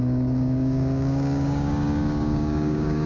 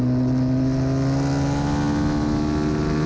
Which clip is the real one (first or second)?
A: second